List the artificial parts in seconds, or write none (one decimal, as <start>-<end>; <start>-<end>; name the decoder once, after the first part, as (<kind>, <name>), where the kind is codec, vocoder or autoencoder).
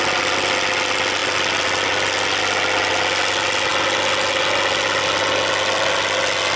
none